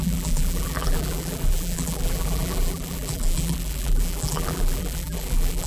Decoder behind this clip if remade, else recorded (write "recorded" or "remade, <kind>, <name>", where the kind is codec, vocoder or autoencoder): remade, vocoder, BigVGAN v2